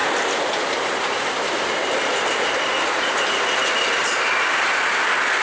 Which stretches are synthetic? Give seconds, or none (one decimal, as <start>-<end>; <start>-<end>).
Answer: none